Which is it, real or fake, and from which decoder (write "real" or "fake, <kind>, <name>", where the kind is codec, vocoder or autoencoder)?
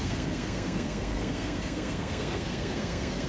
fake, codec, SNAC